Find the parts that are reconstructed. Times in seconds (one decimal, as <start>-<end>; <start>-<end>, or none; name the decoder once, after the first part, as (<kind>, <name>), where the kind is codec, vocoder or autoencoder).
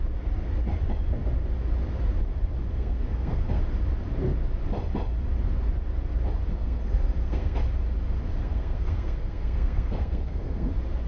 2.7-3.6 (codec, SNAC); 6.5-7.6; 8.3-10.7